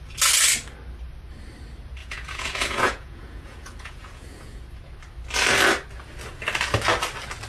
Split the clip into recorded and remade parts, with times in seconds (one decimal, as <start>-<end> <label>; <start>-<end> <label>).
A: 0.0-2.0 recorded; 2.0-4.6 remade; 4.6-7.5 recorded